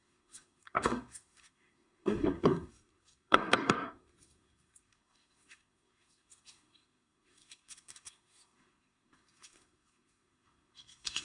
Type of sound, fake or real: fake